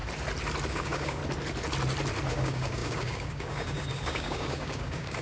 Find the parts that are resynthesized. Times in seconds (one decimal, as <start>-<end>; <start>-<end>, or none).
0.7-1.2; 2.3-5.2